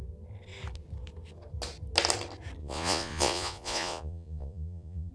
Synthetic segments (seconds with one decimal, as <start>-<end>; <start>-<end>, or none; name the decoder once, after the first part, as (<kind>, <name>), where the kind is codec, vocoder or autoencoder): 2.6-5.1 (vocoder, Vocos)